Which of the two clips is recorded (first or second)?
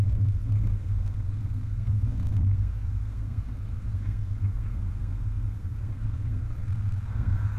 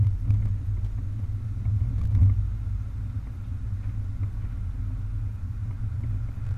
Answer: second